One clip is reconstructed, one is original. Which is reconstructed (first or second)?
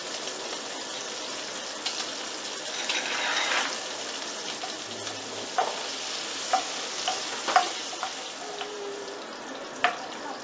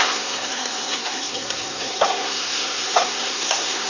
second